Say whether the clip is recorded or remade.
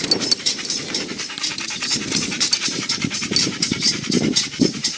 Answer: remade